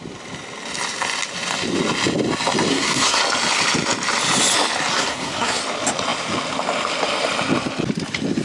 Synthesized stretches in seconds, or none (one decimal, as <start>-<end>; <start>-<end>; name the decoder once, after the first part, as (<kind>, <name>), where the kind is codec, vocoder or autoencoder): 2.7-3.2 (codec, SNAC); 4.9-5.6